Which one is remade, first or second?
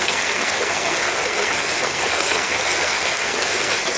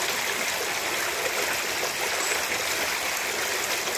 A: first